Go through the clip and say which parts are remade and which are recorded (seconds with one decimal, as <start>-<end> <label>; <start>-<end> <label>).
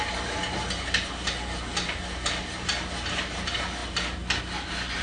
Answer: 0.0-5.0 recorded